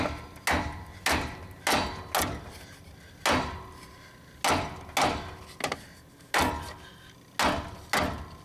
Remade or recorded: recorded